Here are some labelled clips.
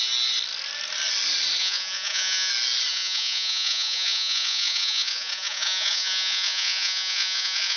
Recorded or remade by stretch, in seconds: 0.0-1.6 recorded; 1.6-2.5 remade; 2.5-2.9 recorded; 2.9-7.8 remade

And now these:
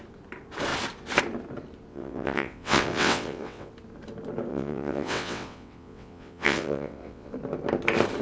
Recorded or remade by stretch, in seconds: 0.0-1.9 recorded; 1.9-3.7 remade; 3.7-4.5 recorded; 4.5-7.3 remade; 7.3-8.2 recorded

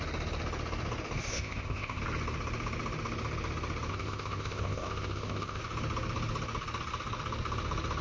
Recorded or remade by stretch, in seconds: 0.0-1.3 recorded; 1.3-2.0 remade; 2.0-3.9 recorded; 3.9-5.6 remade; 5.6-8.0 recorded